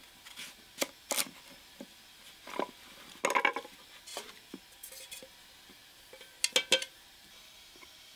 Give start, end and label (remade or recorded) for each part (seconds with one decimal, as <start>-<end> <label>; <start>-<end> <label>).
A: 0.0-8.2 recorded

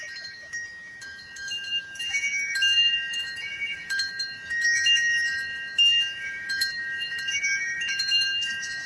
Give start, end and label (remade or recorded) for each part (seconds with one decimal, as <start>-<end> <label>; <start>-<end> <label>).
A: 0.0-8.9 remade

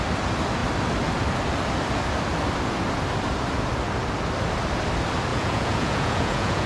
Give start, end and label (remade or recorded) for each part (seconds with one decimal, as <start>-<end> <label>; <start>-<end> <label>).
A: 0.0-5.3 recorded; 5.3-6.7 remade

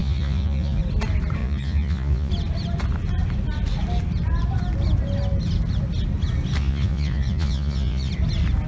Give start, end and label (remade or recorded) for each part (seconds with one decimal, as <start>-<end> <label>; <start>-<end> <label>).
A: 0.0-0.8 remade; 0.8-1.4 recorded; 1.4-2.3 remade; 2.3-6.6 recorded; 6.6-8.1 remade; 8.1-8.7 recorded

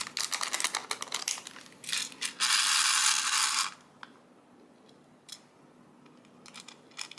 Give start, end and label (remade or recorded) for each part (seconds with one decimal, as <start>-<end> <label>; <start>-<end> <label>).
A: 0.0-7.2 recorded